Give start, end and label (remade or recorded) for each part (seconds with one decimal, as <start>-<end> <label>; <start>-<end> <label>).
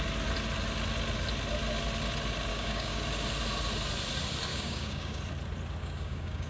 0.0-2.5 recorded; 2.5-3.0 remade; 3.0-4.5 recorded; 4.5-5.2 remade; 5.2-5.8 recorded; 5.8-6.5 remade